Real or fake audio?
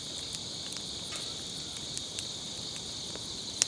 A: real